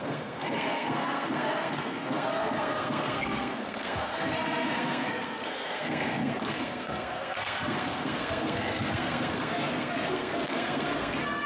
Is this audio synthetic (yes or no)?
yes